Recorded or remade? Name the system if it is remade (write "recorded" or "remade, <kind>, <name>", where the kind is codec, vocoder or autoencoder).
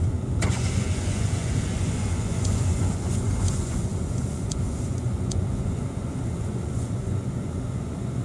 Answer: remade, vocoder, Vocos